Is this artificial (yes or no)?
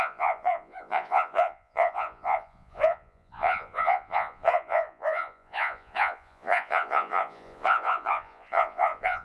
yes